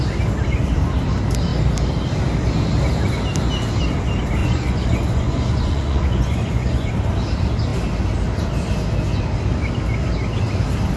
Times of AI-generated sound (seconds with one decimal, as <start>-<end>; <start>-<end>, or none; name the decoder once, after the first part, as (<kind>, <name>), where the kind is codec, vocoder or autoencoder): 4.4-6.9 (vocoder, Vocos)